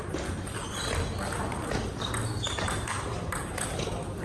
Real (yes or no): yes